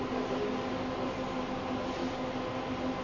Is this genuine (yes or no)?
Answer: yes